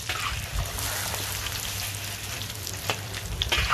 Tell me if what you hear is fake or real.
fake